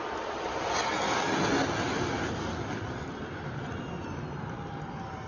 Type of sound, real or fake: fake